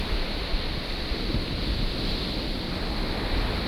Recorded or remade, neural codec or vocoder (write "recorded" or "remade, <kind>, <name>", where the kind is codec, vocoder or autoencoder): recorded